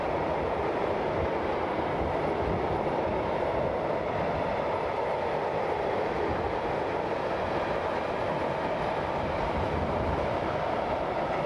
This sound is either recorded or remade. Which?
remade